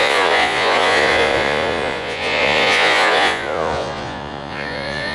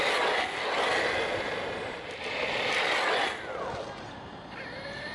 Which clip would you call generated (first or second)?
first